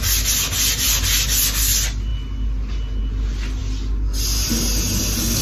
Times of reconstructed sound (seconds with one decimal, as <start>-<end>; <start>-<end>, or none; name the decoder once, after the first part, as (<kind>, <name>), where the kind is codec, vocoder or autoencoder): none